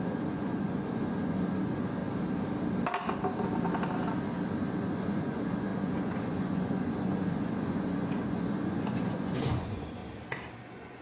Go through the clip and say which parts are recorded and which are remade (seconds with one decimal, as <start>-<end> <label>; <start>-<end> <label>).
0.0-2.0 remade; 2.0-4.8 recorded; 4.8-10.0 remade; 10.0-10.6 recorded; 10.6-11.0 remade